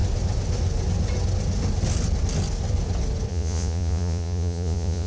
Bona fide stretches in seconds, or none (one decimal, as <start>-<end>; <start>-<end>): 0.0-3.3